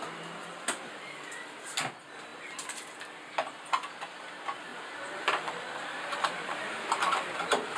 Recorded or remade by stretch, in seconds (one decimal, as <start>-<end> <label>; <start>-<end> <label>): 0.0-4.7 recorded; 4.7-7.8 remade